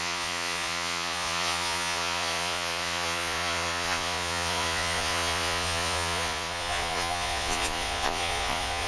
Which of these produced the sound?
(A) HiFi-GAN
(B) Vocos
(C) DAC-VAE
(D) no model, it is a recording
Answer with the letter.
B